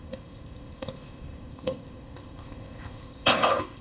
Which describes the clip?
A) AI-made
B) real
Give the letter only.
A